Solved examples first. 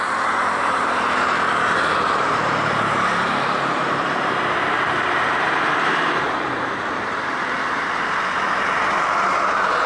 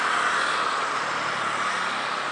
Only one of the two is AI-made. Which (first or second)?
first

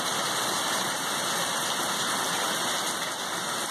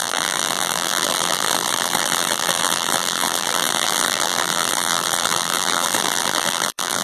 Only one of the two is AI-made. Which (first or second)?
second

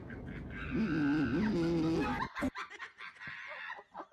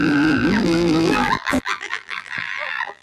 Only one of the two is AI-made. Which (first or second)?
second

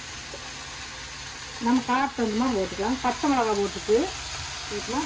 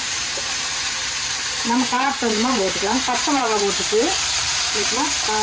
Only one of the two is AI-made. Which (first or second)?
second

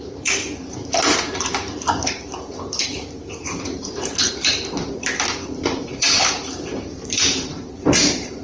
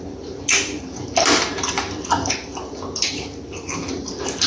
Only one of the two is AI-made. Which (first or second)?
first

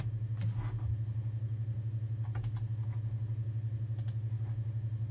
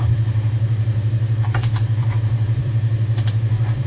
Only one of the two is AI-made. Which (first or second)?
second